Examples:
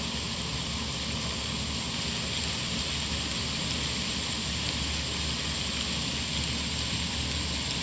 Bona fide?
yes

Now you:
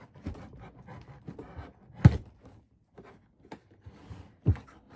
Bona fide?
yes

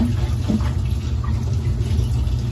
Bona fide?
yes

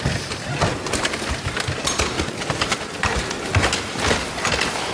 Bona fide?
no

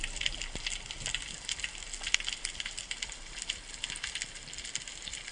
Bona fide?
yes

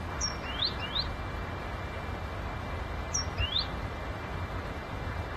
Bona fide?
yes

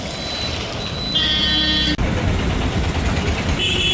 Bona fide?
yes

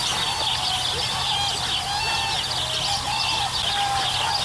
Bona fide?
yes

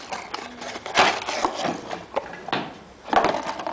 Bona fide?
yes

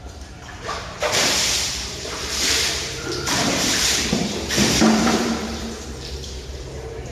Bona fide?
no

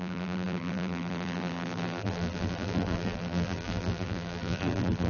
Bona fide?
no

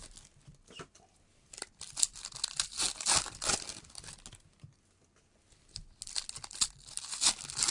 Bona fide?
yes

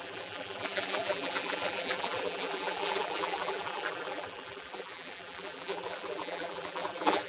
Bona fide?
no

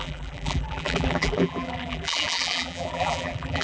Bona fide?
no